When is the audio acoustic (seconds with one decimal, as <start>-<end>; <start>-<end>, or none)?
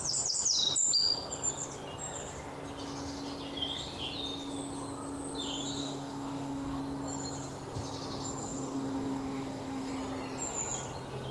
0.0-5.8; 6.8-8.4; 9.9-11.3